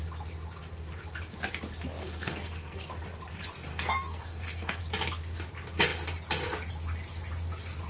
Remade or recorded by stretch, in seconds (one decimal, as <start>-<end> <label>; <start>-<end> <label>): 0.0-2.0 recorded; 2.0-2.9 remade; 2.9-3.7 recorded; 3.7-4.8 remade; 4.8-7.9 recorded